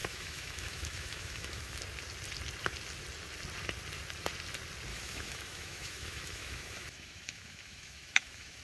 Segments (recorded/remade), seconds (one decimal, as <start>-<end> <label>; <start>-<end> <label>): 0.0-1.8 remade; 1.8-4.9 recorded; 4.9-8.6 remade